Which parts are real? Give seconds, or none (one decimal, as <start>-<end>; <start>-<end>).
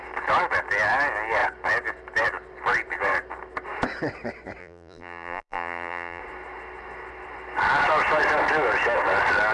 0.0-4.6; 6.2-9.5